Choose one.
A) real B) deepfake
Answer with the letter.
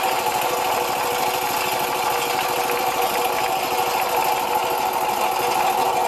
A